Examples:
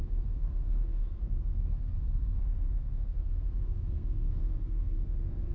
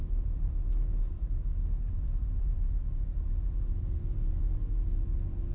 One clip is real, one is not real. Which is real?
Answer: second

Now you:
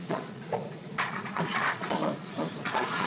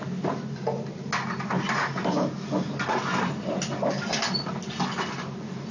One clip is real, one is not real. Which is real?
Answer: second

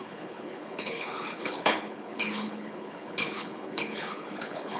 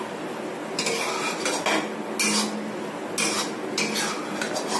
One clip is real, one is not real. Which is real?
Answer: second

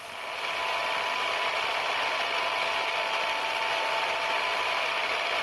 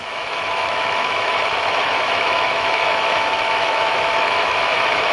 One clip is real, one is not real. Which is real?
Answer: first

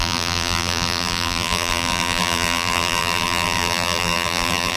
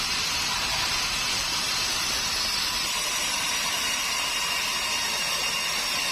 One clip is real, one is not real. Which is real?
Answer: second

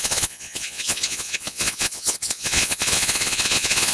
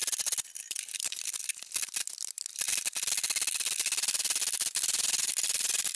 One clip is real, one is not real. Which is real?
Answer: second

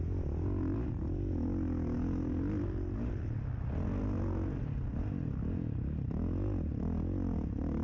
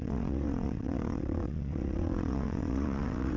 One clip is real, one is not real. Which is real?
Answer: first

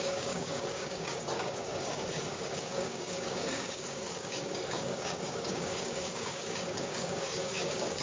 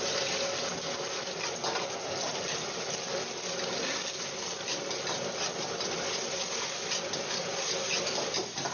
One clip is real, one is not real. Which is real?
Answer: second